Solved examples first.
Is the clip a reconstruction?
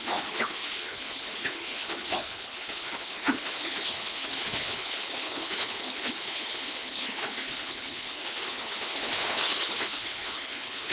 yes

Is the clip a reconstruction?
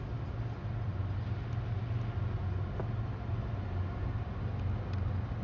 no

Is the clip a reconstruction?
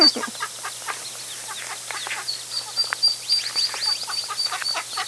no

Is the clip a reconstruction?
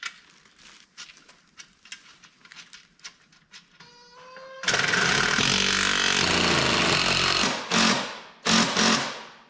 no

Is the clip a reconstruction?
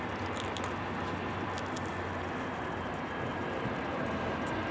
no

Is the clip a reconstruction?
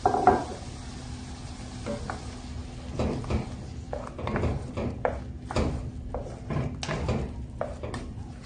no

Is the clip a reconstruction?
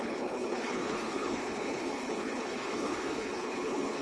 yes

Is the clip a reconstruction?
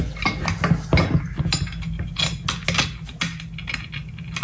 no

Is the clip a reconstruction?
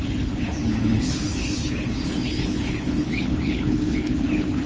yes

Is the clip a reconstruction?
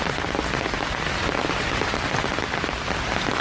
no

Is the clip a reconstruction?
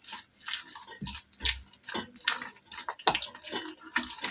no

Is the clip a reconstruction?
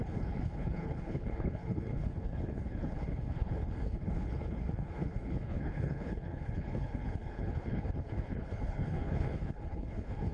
yes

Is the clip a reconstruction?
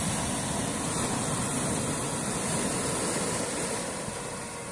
no